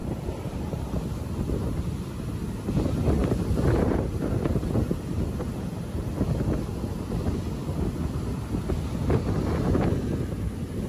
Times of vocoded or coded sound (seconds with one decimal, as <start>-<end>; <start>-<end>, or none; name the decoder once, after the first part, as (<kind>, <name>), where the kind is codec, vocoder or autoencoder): 0.0-0.9 (vocoder, BigVGAN v2); 3.2-6.1